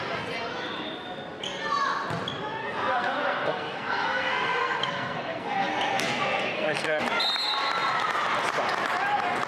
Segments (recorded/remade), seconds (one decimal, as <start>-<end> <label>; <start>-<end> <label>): 0.0-2.6 recorded; 2.6-7.0 remade; 7.0-9.5 recorded